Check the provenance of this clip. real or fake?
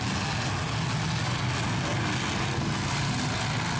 real